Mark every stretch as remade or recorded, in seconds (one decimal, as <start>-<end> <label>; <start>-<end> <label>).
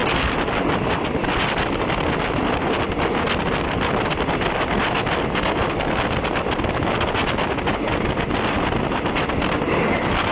0.0-2.8 remade; 2.8-10.3 recorded